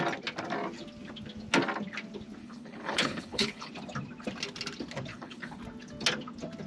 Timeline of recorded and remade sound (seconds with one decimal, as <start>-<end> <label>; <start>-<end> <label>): 0.0-2.4 recorded; 2.4-3.7 remade; 3.7-5.1 recorded; 5.1-5.6 remade; 5.6-6.7 recorded